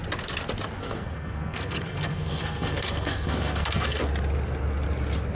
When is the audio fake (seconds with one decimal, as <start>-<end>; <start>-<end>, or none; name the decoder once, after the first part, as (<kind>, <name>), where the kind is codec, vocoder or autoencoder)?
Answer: 0.8-4.0 (codec, SNAC)